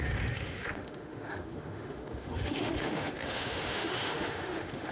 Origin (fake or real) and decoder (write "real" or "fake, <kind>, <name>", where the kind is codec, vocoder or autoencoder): fake, autoencoder, DAC-VAE